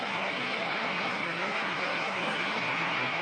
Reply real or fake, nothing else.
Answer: fake